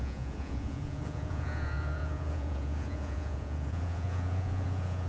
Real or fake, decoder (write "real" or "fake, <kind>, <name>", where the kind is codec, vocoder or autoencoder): fake, vocoder, Vocos